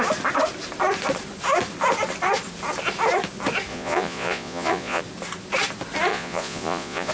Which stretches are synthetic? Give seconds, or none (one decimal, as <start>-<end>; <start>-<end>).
3.7-5.0; 6.1-7.1